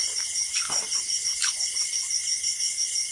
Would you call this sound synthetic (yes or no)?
no